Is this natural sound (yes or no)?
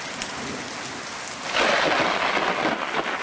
yes